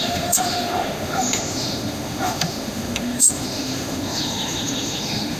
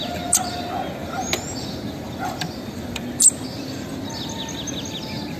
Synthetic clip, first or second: first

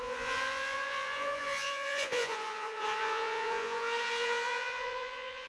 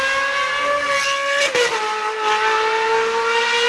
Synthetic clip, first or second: first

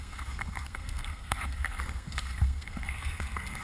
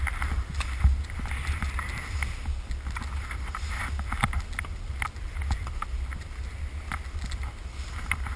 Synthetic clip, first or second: first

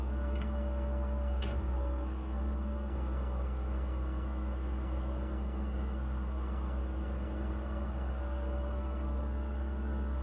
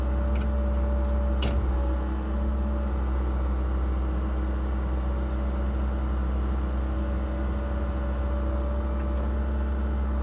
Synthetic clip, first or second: first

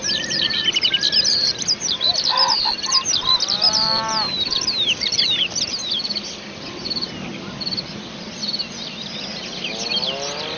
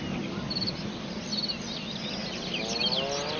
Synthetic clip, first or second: first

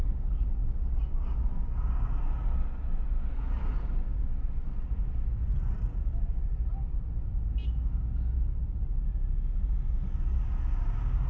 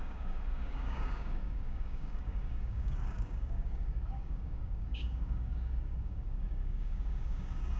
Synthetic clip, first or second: second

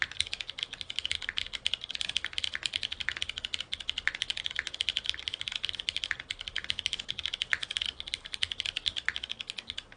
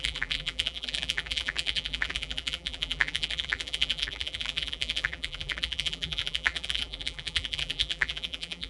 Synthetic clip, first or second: second